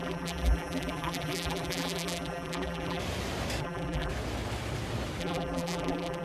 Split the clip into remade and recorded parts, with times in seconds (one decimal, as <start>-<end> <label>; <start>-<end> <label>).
0.0-3.0 remade; 3.0-3.6 recorded; 3.6-4.1 remade; 4.1-5.2 recorded; 5.2-6.2 remade